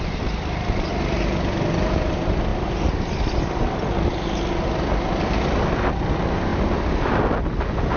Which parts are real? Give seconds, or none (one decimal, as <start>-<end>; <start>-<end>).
0.0-8.0